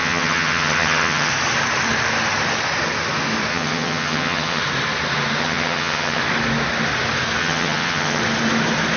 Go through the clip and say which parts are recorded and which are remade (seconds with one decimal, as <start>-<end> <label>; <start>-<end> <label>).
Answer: 0.0-1.3 remade; 1.3-3.5 recorded; 3.5-4.6 remade; 4.6-5.4 recorded; 5.4-6.2 remade; 6.2-7.4 recorded; 7.4-8.2 remade; 8.2-9.0 recorded